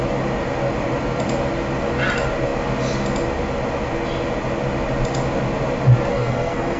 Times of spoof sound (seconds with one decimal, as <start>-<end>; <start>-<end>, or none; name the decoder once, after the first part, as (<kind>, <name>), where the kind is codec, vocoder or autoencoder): 6.1-6.8 (codec, SNAC)